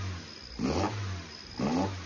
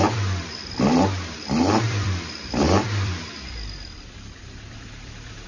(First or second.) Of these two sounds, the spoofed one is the second